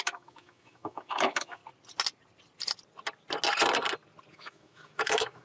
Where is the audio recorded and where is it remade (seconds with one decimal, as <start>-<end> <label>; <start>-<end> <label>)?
0.0-1.6 remade; 1.6-4.3 recorded; 4.3-5.4 remade